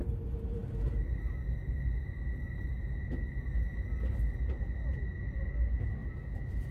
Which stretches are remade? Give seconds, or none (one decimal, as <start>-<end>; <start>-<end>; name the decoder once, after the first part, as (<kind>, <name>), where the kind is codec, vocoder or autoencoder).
none